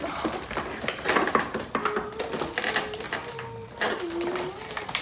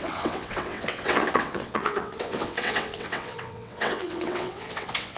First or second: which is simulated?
second